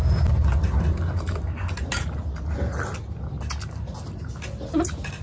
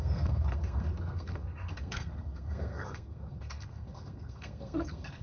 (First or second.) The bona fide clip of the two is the first